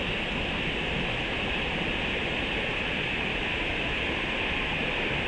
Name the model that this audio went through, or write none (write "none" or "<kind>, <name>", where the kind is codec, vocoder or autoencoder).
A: none